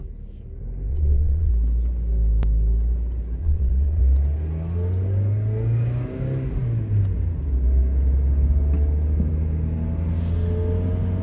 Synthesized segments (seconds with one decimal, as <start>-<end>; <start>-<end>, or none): 0.9-1.5; 3.4-4.0